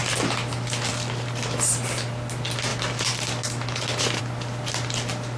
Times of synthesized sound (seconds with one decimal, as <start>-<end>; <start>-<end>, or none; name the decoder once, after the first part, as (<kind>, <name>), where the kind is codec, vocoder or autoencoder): none